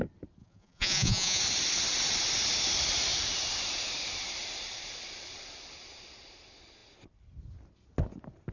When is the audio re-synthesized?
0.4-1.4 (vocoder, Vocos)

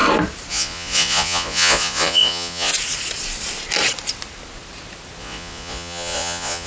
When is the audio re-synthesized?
0.5-2.7 (vocoder, Vocos); 5.2-6.7

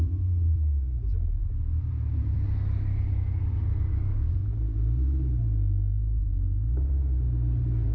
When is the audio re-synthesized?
none